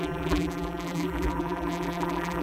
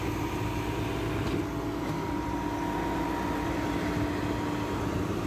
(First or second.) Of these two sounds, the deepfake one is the first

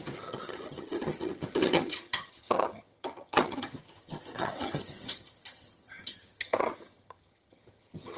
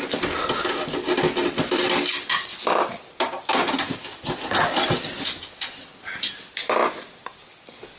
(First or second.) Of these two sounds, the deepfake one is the first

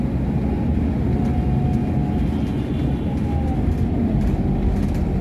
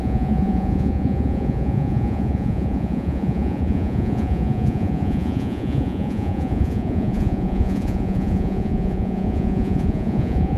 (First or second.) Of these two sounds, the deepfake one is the second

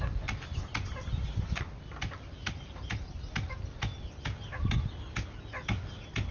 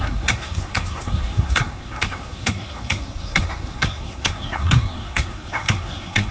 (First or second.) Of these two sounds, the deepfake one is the second